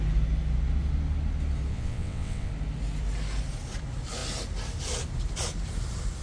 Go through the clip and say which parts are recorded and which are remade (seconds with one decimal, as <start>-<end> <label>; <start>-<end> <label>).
0.0-1.7 recorded; 1.7-2.5 remade; 2.5-6.2 recorded